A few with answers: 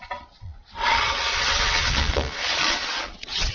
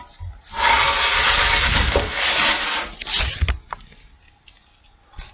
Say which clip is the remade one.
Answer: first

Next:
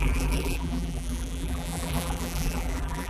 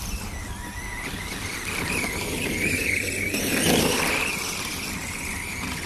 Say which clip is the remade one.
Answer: first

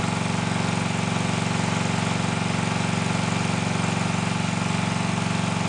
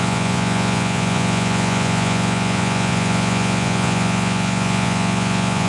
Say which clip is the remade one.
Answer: second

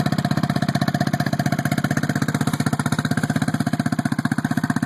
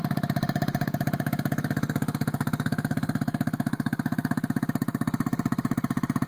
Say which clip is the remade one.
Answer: second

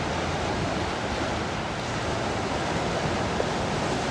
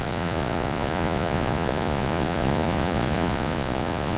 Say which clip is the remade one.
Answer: second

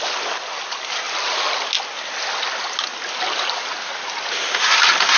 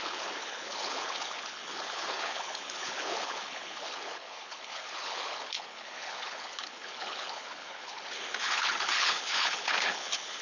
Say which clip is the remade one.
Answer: second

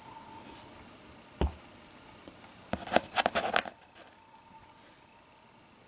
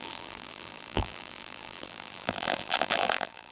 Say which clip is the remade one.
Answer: second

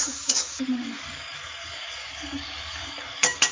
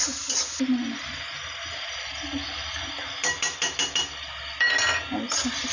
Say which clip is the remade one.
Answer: first